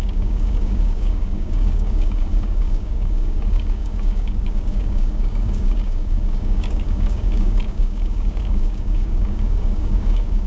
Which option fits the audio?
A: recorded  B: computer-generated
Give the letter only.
B